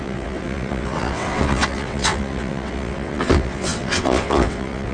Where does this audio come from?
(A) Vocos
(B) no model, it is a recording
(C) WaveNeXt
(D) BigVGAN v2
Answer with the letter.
C